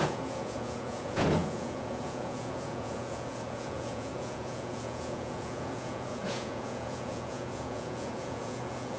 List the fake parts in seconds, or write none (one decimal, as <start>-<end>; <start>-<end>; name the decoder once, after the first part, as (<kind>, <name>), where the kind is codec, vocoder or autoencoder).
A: 0.0-9.0 (vocoder, Vocos)